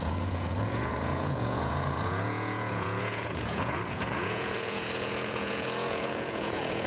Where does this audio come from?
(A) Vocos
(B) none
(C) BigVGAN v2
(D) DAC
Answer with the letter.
A